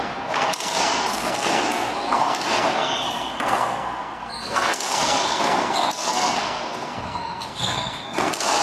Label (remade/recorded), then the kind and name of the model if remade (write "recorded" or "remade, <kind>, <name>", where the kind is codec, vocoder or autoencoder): remade, codec, SNAC